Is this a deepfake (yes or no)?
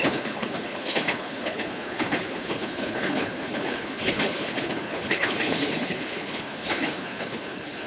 yes